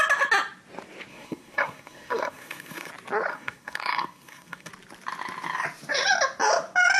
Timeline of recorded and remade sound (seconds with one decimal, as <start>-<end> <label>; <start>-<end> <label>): 0.0-1.1 recorded; 1.1-2.9 remade; 2.9-3.3 recorded; 3.3-4.7 remade; 4.7-7.0 recorded